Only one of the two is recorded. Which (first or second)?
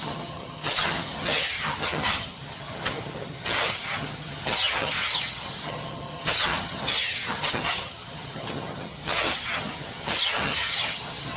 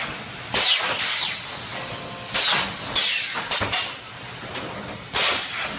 second